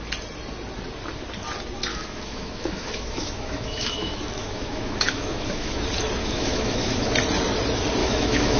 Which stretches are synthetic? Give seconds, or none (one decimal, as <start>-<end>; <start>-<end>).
1.9-5.8; 6.2-7.1; 8.0-8.6

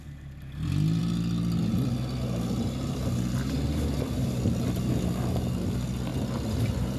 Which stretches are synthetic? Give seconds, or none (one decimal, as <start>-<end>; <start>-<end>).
none

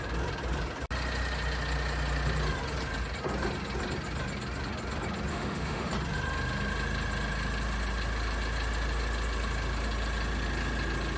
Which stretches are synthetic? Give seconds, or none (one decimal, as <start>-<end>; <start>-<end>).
5.3-5.9

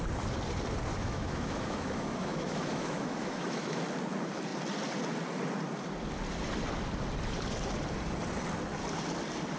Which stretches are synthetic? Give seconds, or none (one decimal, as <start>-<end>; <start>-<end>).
0.9-3.8

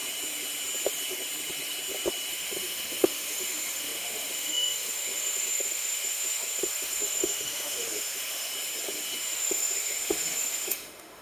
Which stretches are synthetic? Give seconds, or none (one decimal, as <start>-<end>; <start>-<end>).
2.3-8.5; 9.2-11.2

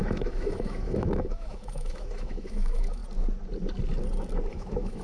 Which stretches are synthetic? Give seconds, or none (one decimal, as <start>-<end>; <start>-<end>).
0.0-3.0; 4.5-5.0